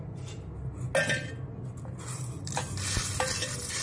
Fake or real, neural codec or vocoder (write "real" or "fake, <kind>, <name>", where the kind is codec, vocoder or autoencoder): real